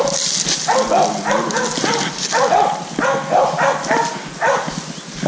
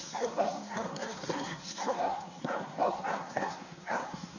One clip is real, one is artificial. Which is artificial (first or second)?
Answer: second